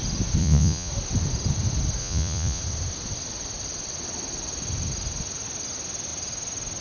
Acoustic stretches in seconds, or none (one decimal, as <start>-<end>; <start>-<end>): 0.0-0.4; 0.9-2.0; 2.6-6.8

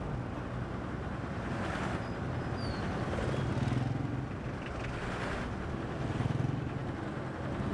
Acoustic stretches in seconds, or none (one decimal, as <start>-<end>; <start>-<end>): 0.0-7.7

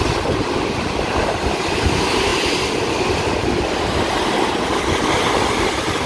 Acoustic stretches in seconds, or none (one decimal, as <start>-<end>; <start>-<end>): 0.0-6.1

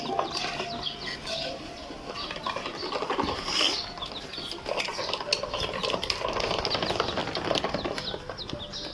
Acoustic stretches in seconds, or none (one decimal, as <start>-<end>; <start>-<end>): 0.0-8.9

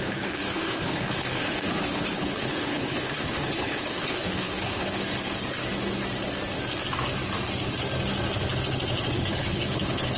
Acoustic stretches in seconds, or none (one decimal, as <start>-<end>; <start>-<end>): 5.0-9.1

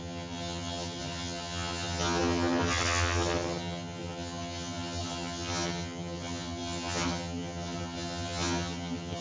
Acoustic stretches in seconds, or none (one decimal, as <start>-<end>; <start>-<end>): none

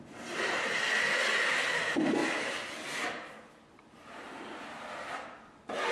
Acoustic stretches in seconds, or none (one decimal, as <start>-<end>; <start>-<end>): 0.0-2.2; 4.8-5.9

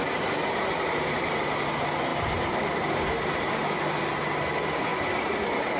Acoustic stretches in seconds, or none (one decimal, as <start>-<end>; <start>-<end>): 0.0-2.1; 3.0-5.8